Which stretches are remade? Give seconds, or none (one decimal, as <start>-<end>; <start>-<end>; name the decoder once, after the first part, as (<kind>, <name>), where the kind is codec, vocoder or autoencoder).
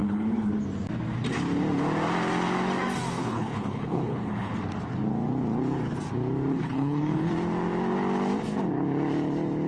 0.0-0.5 (codec, HILCodec); 3.2-4.5; 6.5-7.3